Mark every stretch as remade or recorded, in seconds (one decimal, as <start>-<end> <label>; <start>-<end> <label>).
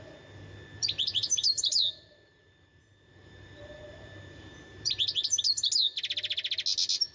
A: 0.0-0.8 recorded; 0.8-4.9 remade; 4.9-7.1 recorded